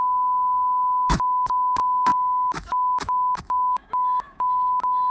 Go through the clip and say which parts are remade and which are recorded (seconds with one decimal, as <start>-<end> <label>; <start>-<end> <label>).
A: 0.0-5.1 remade